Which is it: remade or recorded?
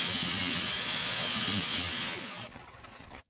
remade